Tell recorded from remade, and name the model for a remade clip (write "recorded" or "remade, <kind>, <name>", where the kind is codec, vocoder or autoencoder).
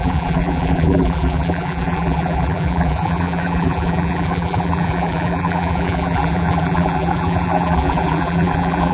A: remade, vocoder, BigVGAN v2